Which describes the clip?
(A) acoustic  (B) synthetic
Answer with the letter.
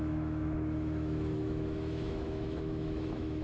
B